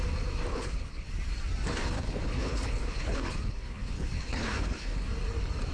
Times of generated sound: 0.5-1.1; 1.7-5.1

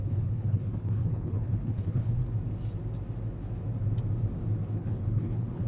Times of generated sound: 0.0-2.2; 4.7-5.7